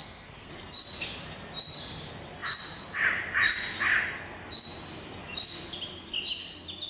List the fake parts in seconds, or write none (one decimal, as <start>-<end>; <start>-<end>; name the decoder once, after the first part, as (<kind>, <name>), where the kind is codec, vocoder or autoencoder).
0.0-0.5 (codec, SNAC)